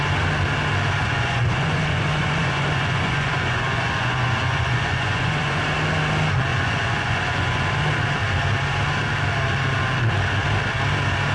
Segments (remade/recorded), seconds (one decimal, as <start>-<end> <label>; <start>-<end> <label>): 0.0-1.0 recorded; 1.0-5.6 remade; 5.6-6.5 recorded; 6.5-7.6 remade; 7.6-11.3 recorded